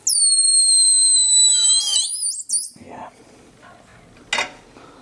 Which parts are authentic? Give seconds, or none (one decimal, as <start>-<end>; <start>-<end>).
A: 0.0-2.5; 3.2-5.0